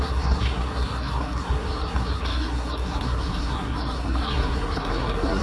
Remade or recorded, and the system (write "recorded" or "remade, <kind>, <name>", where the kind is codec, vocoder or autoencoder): remade, codec, SNAC